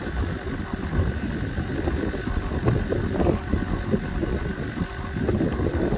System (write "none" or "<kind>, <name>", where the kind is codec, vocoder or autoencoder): none